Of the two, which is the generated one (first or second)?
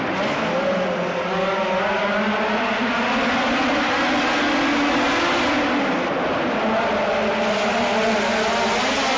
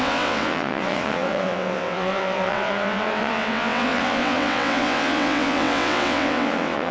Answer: second